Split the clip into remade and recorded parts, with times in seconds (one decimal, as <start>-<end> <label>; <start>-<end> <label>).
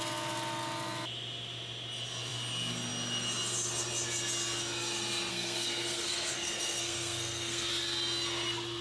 0.0-5.3 recorded; 5.3-7.7 remade; 7.7-8.8 recorded